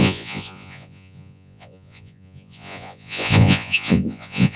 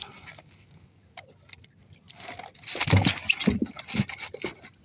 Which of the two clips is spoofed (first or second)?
first